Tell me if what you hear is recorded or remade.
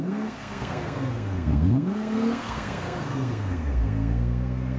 remade